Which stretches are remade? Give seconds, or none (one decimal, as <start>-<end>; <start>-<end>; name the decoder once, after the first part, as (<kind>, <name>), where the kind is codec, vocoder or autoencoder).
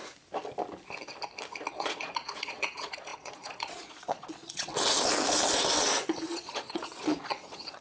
1.7-4.7 (vocoder, Vocos); 5.8-7.8